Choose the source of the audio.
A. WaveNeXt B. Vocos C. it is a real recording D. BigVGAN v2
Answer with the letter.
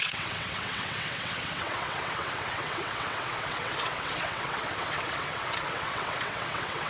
A